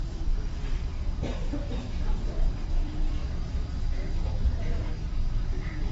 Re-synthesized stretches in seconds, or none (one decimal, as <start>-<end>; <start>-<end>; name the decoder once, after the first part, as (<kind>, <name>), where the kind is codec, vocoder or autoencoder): 0.0-3.2 (vocoder, BigVGAN v2); 4.9-5.9